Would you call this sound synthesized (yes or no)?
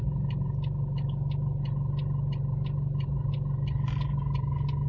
no